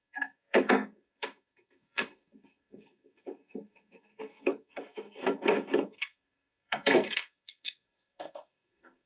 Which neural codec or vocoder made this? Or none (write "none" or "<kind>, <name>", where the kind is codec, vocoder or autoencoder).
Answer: codec, SNAC